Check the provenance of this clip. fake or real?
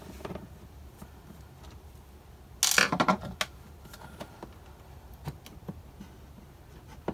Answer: real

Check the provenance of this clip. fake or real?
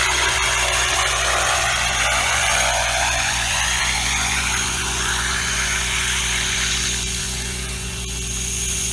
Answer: fake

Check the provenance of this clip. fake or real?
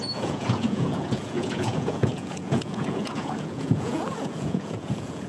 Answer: fake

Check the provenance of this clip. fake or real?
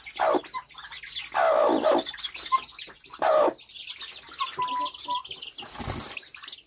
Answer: real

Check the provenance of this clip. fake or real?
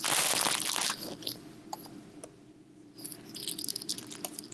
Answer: real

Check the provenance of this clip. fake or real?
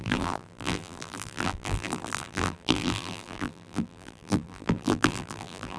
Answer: fake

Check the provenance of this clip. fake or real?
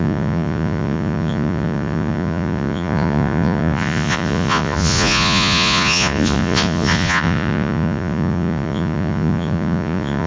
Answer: fake